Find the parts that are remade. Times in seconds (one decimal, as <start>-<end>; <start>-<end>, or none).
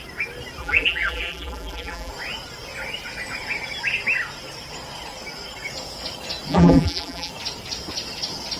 0.6-2.1; 6.5-7.3